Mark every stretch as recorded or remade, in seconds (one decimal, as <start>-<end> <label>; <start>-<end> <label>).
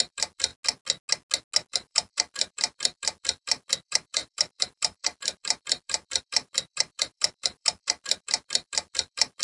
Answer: 0.0-0.5 remade; 0.5-1.7 recorded; 1.7-9.4 remade